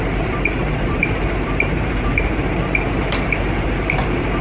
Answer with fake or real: fake